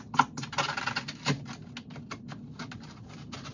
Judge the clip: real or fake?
real